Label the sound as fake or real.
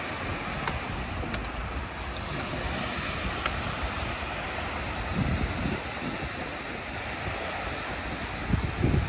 real